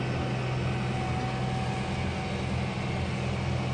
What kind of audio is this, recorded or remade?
recorded